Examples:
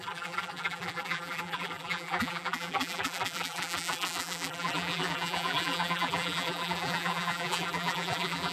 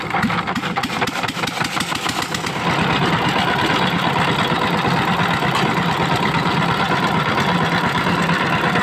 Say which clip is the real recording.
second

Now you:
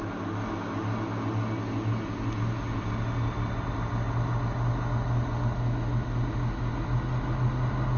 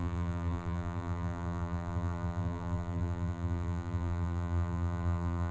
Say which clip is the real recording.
first